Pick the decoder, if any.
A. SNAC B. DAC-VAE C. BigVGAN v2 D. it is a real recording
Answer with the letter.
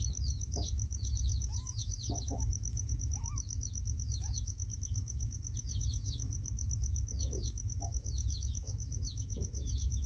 B